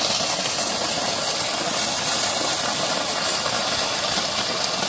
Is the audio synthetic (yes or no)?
no